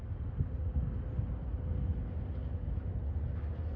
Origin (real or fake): real